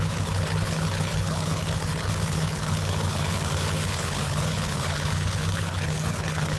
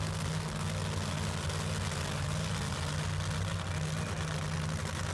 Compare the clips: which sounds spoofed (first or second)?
first